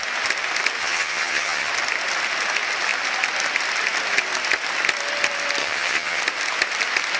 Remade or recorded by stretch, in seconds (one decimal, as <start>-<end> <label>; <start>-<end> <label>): 0.0-0.8 recorded; 0.8-1.7 remade; 1.7-5.6 recorded; 5.6-6.2 remade; 6.2-7.2 recorded